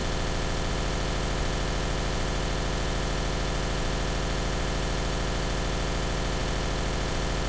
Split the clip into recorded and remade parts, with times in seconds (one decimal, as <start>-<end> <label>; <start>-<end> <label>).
0.0-0.7 recorded; 0.7-7.5 remade